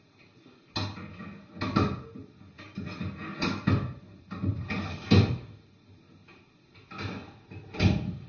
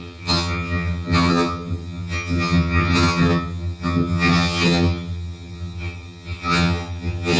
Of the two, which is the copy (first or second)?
second